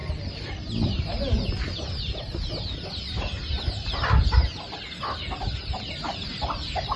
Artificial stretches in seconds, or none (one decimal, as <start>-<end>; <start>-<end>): none